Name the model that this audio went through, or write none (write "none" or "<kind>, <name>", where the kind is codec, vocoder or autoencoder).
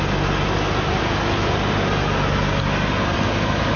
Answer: none